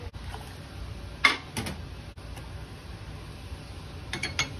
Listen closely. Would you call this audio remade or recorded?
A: recorded